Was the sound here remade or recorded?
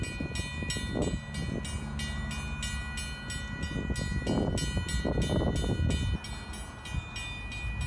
recorded